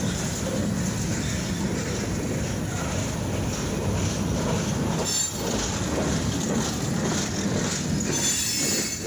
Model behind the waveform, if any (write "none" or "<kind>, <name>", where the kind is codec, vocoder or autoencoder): none